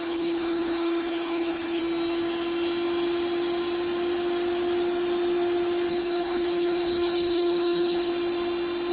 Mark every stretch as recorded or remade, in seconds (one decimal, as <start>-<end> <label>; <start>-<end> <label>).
0.0-1.8 remade; 1.8-5.9 recorded; 5.9-8.1 remade; 8.1-8.9 recorded